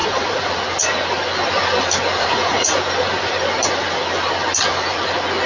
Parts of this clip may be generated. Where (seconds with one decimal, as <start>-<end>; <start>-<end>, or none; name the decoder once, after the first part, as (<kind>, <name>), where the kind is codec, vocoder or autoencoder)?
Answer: 0.0-0.5 (vocoder, Vocos); 2.2-2.8